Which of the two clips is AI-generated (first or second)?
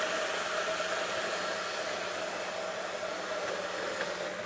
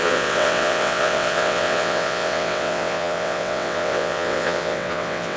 second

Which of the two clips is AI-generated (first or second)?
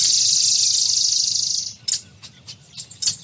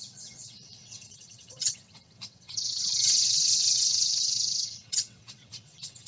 second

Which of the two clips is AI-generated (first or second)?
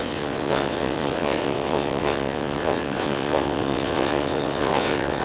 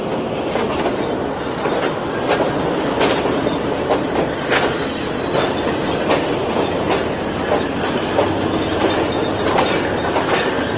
first